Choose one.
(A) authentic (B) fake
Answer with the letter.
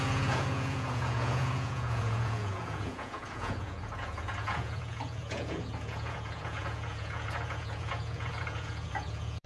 B